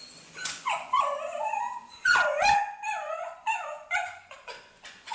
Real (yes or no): no